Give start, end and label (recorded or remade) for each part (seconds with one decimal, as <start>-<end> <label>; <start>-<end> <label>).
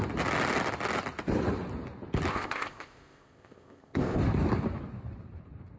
0.0-2.3 recorded; 2.3-4.2 remade; 4.2-5.8 recorded